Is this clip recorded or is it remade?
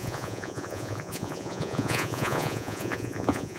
remade